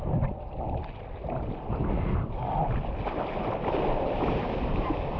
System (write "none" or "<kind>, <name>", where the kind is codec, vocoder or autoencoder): none